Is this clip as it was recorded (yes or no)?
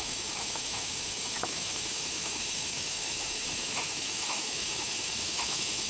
no